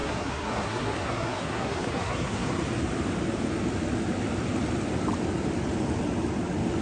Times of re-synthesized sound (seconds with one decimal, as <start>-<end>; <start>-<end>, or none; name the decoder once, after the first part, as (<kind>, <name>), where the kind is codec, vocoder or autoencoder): 0.0-2.6 (codec, SNAC)